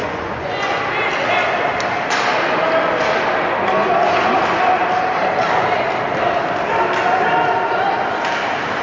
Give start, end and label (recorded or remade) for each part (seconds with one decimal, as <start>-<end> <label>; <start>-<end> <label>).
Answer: 0.0-0.8 remade; 0.8-8.8 recorded